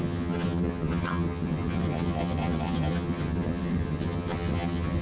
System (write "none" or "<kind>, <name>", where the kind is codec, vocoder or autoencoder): vocoder, HiFi-GAN